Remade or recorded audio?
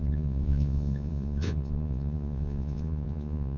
remade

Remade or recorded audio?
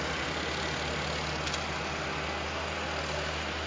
recorded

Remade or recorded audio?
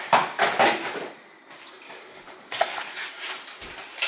recorded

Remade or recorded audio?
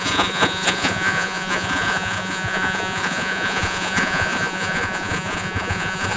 remade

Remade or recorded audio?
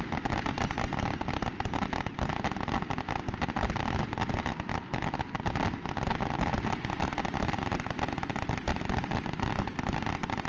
recorded